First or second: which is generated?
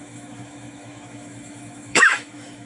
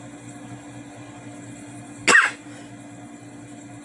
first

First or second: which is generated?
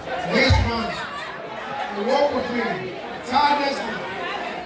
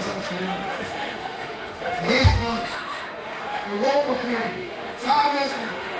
second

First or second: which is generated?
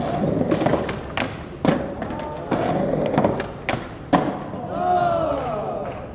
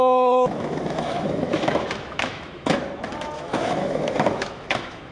second